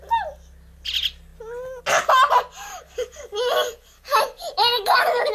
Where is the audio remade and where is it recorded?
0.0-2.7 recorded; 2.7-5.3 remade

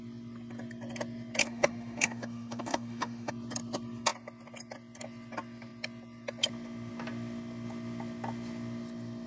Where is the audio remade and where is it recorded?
0.0-1.4 recorded; 1.4-3.3 remade; 3.3-9.3 recorded

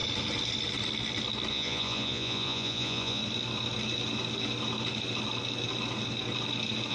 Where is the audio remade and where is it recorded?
0.0-1.5 recorded; 1.5-3.2 remade; 3.2-6.9 recorded